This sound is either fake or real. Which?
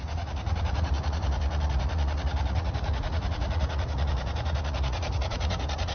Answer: fake